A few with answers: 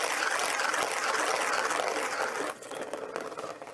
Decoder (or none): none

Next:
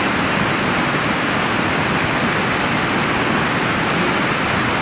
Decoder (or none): none